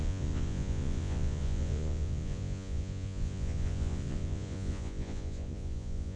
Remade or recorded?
remade